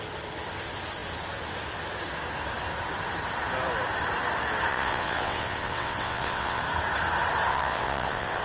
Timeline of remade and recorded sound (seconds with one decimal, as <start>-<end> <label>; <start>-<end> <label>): 0.0-4.7 recorded; 4.7-6.6 remade; 6.6-7.5 recorded; 7.5-8.4 remade